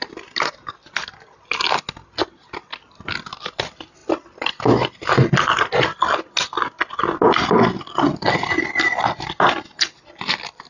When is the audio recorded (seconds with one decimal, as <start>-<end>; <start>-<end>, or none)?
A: 0.0-10.7